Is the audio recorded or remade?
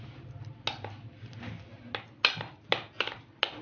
recorded